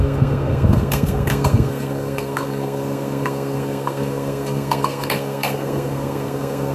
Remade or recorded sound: remade